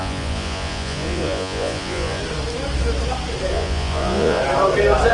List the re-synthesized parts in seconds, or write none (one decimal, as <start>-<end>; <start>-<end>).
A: 0.0-2.2; 3.5-4.4